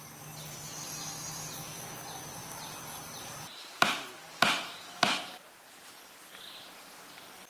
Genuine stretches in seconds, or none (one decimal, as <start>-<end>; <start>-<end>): 0.0-2.4; 4.3-7.5